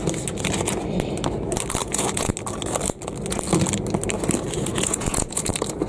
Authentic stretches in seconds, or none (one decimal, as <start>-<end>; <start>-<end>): 0.0-1.8; 2.3-4.7; 5.5-5.9

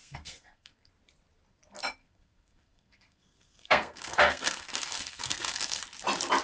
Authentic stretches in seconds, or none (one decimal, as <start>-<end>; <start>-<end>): 0.9-2.0; 5.8-6.4

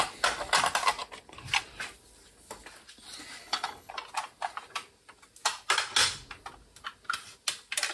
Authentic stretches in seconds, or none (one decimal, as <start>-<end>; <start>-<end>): 0.0-3.4; 3.9-7.9

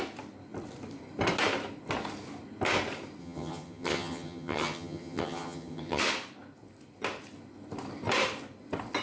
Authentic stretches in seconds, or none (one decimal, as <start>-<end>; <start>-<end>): 0.0-3.2; 6.0-9.0

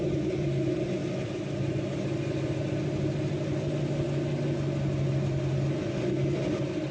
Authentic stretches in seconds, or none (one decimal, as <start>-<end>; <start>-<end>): 0.0-6.9

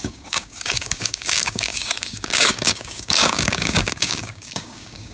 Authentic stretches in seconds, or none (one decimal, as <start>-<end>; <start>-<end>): none